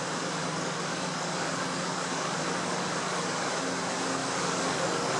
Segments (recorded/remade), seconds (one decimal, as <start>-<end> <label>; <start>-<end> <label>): 0.0-0.4 recorded; 0.4-3.5 remade; 3.5-4.2 recorded; 4.2-5.2 remade